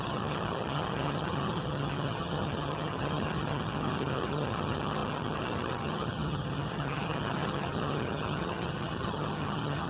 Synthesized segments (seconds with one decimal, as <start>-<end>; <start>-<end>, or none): 0.0-9.9